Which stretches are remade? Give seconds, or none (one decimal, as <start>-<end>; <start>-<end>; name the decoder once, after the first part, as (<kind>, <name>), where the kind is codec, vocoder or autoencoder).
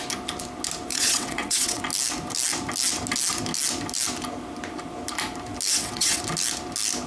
0.9-1.8 (vocoder, WaveNeXt); 5.7-6.2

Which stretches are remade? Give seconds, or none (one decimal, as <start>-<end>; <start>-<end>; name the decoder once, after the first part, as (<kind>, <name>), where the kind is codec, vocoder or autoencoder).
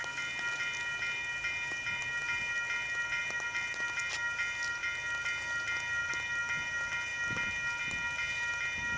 none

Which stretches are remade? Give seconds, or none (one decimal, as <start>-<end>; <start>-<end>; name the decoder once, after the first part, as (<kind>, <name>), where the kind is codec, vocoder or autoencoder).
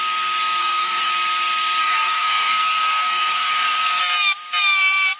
0.6-1.1 (codec, SNAC); 1.8-4.0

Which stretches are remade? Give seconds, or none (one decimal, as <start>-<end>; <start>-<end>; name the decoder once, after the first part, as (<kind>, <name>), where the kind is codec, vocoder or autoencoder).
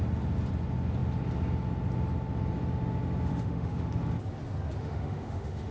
3.3-3.9 (autoencoder, DAC-VAE); 4.8-5.7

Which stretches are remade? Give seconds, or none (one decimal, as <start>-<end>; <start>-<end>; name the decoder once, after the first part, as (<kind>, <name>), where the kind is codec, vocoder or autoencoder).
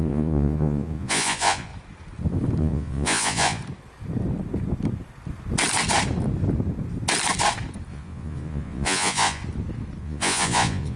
0.0-1.7 (vocoder, Vocos); 2.6-3.6; 7.9-9.4; 10.0-11.0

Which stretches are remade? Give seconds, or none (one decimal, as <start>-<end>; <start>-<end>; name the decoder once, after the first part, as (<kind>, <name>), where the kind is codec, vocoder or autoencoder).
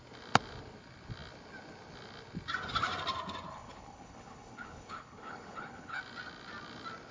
3.5-6.0 (codec, HILCodec)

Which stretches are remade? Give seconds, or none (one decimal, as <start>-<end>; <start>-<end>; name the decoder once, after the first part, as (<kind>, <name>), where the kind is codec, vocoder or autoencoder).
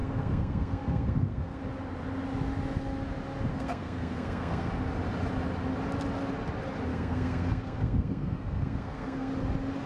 0.0-1.6 (codec, SNAC); 3.5-4.7; 6.9-9.3